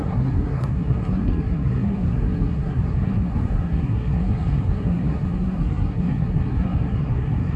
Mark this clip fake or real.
fake